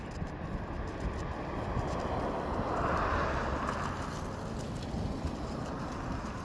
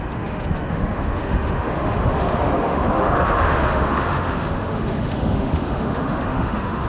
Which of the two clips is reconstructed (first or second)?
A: second